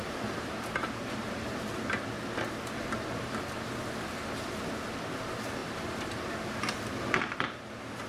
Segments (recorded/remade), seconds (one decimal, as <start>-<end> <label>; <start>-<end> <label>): 0.0-2.0 remade; 2.0-5.6 recorded; 5.6-6.1 remade; 6.1-8.1 recorded